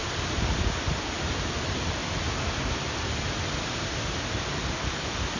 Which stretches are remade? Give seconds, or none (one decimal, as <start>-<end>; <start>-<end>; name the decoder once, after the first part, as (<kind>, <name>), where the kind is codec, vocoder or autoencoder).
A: 0.0-2.0 (vocoder, BigVGAN v2)